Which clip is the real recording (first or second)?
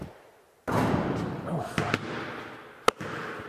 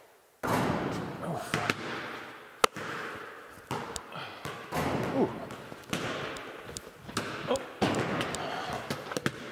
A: second